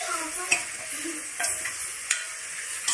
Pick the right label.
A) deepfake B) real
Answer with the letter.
A